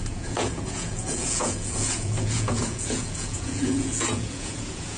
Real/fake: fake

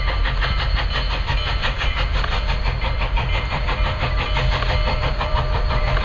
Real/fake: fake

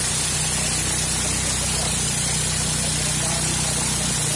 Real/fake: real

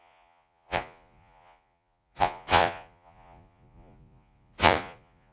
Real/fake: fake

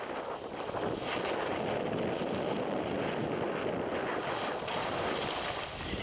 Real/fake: real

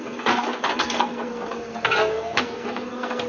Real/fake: fake